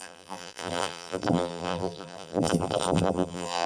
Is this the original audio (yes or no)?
no